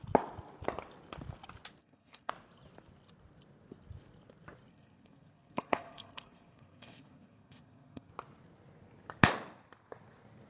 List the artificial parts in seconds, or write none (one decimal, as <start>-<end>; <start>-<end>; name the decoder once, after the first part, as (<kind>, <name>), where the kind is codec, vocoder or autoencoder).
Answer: 1.8-2.3 (codec, SNAC); 4.7-8.1